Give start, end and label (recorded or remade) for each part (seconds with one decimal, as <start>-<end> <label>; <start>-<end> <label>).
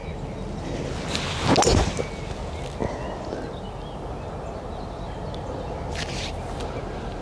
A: 0.0-7.2 recorded